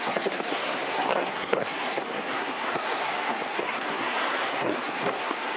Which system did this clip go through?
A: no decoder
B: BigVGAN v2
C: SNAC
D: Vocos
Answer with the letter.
C